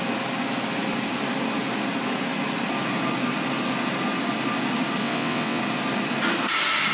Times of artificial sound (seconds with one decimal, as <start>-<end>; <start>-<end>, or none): 5.0-5.6